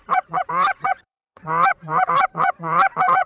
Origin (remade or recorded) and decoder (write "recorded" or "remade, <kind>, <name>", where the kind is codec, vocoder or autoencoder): remade, vocoder, Vocos